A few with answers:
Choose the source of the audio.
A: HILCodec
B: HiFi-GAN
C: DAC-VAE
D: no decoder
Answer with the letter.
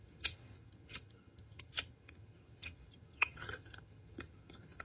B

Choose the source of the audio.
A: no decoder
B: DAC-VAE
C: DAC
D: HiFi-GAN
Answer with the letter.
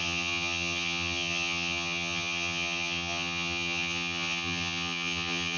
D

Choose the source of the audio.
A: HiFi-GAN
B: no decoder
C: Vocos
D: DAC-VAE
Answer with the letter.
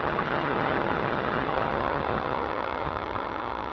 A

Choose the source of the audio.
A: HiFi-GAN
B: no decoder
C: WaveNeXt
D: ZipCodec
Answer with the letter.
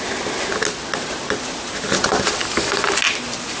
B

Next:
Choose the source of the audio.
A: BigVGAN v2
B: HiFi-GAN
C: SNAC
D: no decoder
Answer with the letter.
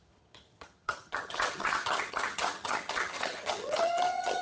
B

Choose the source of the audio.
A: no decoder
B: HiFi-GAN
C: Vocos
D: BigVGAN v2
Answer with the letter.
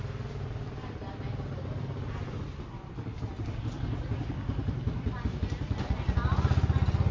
A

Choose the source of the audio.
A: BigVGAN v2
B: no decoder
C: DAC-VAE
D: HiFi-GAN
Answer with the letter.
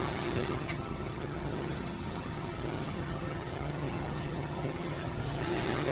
D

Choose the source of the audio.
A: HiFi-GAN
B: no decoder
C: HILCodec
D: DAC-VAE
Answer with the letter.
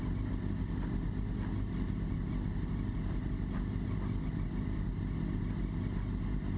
B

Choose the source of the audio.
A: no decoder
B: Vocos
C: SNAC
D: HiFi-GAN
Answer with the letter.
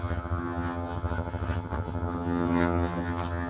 D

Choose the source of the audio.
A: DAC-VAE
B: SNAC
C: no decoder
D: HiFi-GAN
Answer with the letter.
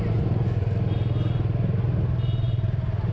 C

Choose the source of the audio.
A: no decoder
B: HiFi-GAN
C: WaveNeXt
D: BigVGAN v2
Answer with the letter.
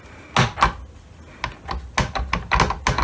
A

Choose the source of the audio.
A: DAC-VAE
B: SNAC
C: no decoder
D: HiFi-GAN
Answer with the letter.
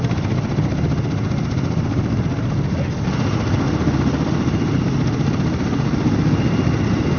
C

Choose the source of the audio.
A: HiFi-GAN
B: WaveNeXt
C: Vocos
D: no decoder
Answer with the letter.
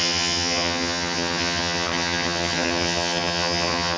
A